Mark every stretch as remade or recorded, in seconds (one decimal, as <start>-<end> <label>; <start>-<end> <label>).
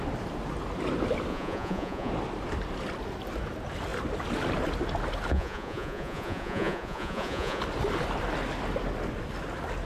0.0-1.3 recorded; 1.3-2.1 remade; 2.1-5.3 recorded; 5.3-7.6 remade; 7.6-9.9 recorded